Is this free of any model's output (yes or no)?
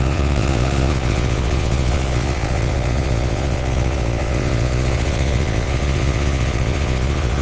no